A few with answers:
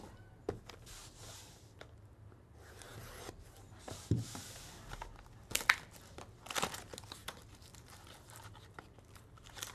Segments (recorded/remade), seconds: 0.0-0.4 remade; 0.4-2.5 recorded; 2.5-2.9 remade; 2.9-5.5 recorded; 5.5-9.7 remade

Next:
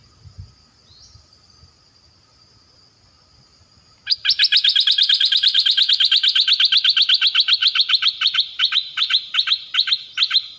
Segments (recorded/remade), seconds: 0.0-4.6 recorded; 4.6-5.9 remade; 5.9-7.6 recorded; 7.6-9.2 remade; 9.2-10.6 recorded